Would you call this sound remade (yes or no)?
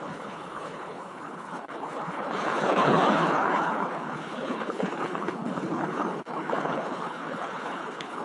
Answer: yes